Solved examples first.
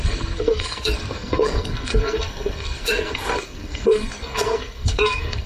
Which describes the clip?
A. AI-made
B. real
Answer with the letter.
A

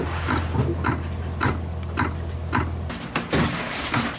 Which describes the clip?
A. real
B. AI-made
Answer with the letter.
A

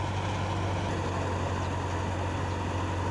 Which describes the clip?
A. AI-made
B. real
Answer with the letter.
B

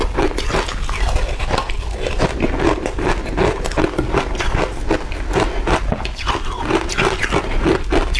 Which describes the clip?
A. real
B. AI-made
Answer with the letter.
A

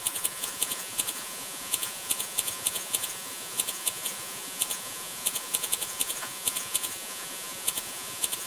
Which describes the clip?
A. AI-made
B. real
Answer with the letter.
A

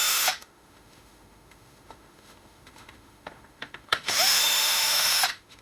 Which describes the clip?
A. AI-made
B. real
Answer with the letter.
A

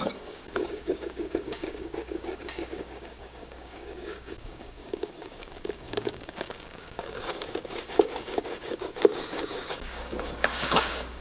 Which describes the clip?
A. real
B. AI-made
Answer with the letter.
B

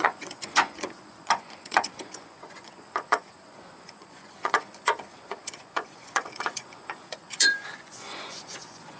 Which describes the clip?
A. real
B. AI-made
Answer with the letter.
B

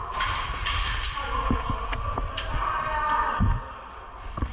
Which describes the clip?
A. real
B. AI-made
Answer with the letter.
A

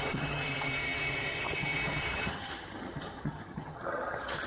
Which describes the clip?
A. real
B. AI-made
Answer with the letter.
B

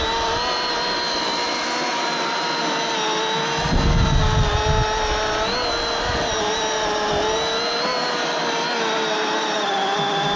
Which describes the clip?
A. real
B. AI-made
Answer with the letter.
A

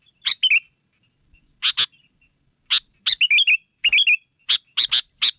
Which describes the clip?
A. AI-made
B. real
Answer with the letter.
B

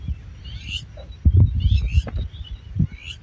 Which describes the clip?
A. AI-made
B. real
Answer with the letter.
B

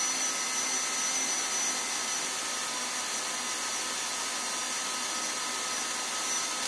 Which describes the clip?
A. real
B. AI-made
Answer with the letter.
A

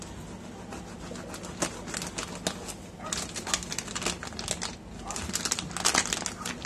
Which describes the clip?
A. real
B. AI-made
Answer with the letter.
A